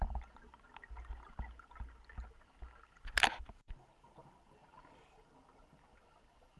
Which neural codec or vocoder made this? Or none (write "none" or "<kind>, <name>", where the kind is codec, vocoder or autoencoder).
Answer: none